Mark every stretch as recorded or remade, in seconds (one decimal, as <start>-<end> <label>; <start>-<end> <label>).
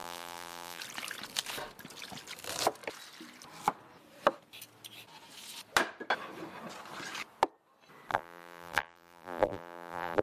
0.0-0.8 remade; 0.8-8.1 recorded; 8.1-10.2 remade